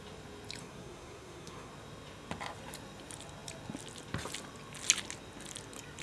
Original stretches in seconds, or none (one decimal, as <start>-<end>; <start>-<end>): 0.0-0.6; 1.7-6.0